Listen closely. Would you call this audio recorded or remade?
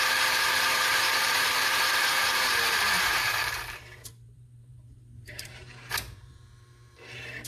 remade